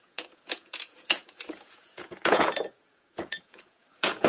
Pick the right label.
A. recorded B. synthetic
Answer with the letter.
B